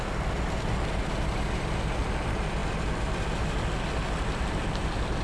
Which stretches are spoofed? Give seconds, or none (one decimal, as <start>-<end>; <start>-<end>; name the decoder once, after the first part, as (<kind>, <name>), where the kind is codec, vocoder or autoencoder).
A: none